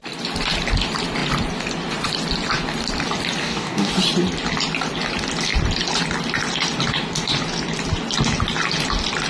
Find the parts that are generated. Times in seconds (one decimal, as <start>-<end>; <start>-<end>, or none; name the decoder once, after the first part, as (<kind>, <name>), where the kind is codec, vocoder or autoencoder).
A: 3.4-3.9 (codec, DAC)